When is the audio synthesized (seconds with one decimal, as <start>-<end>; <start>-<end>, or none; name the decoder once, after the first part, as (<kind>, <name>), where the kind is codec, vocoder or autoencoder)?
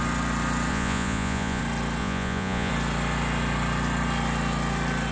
0.7-1.6 (vocoder, Vocos); 2.0-2.7